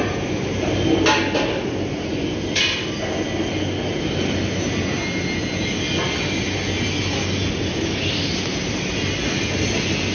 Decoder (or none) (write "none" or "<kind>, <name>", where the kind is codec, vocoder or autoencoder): none